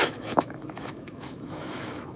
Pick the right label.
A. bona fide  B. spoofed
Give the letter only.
B